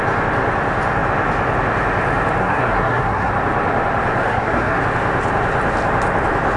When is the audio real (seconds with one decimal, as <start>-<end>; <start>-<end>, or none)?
0.0-2.4; 3.3-4.2; 4.8-6.6